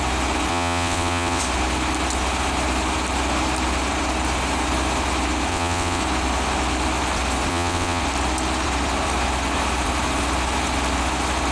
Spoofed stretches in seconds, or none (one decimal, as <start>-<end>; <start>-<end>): 0.5-1.4; 5.5-6.0; 7.5-8.0